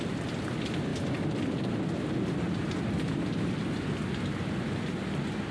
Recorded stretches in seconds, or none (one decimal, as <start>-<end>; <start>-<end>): 0.0-5.5